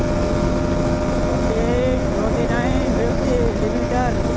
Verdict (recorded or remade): recorded